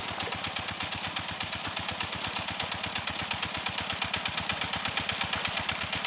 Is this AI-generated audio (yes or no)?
no